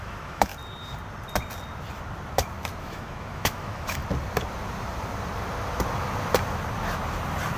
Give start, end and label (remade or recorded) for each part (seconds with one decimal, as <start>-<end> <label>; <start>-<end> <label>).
0.0-0.5 remade; 0.5-2.8 recorded; 2.8-4.0 remade; 4.0-7.6 recorded

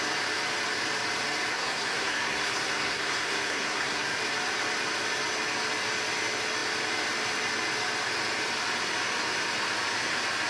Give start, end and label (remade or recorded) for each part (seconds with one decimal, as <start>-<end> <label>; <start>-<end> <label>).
0.0-1.5 recorded; 1.5-4.2 remade; 4.2-10.5 recorded

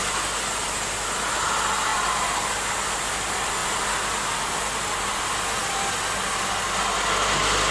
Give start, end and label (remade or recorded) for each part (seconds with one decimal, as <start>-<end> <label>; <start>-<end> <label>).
0.0-7.7 recorded

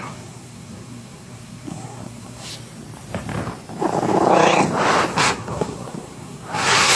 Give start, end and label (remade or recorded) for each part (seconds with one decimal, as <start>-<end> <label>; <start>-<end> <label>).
0.0-2.5 remade; 2.5-5.1 recorded; 5.1-7.0 remade

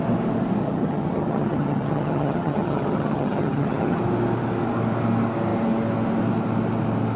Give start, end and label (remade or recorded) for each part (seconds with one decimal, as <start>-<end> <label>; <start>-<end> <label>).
0.0-0.6 recorded; 0.6-4.0 remade; 4.0-7.2 recorded